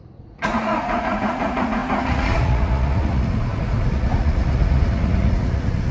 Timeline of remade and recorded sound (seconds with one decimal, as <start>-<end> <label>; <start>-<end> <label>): 0.0-5.9 remade